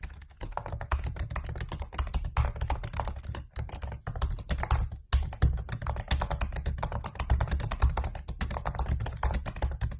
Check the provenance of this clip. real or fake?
real